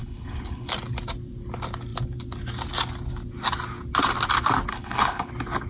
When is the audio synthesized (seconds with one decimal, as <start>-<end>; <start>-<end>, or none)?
0.0-0.7; 4.7-5.3